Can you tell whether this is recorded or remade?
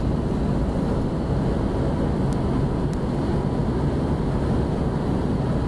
recorded